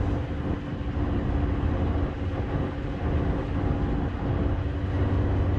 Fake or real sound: real